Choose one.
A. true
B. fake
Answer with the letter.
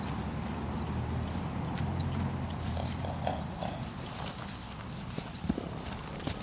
A